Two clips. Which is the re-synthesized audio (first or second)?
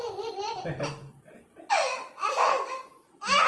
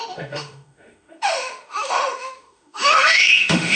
second